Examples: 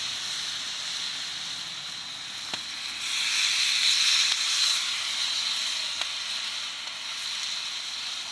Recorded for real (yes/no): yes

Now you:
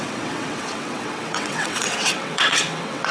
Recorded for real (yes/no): no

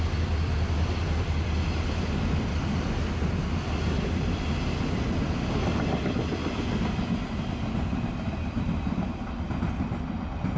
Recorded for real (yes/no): yes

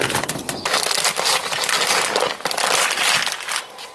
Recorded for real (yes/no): yes